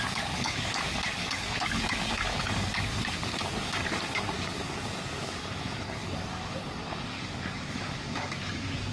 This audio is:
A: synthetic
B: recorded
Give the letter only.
A